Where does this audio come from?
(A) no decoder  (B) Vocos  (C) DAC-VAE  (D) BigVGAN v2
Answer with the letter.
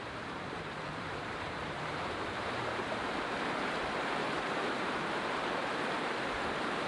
D